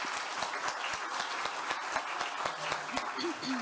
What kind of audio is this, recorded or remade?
recorded